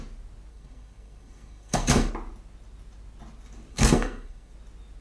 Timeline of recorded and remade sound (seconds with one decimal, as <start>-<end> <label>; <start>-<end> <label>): 0.0-0.5 recorded; 0.5-2.1 remade; 2.1-3.7 recorded; 3.7-4.5 remade; 4.5-5.0 recorded

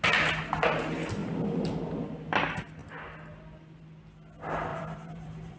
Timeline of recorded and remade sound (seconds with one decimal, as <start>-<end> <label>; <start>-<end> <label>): 0.0-1.2 recorded; 1.2-1.8 remade; 1.8-4.7 recorded; 4.7-5.6 remade

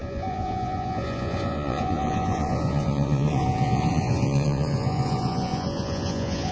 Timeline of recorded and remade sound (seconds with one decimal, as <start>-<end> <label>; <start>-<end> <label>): 0.0-6.5 remade

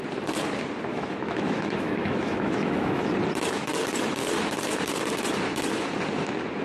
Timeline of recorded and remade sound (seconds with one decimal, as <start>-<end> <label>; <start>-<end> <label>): 0.0-0.9 recorded; 0.9-3.1 remade; 3.1-6.6 recorded

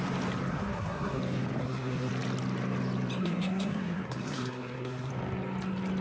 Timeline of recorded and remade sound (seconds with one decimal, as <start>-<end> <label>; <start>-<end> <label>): 0.0-0.5 recorded; 0.5-1.2 remade; 1.2-1.6 recorded; 1.6-2.1 remade; 2.1-3.2 recorded; 3.2-5.1 remade; 5.1-6.0 recorded

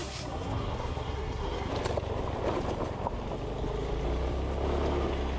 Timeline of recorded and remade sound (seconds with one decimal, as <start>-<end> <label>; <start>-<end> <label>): 0.0-1.7 remade; 1.7-5.4 recorded

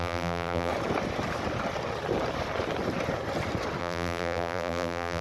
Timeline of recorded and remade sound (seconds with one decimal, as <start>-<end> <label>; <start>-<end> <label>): 0.0-0.7 remade; 0.7-3.8 recorded; 3.8-5.2 remade